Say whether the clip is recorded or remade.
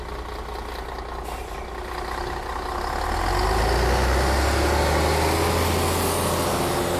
recorded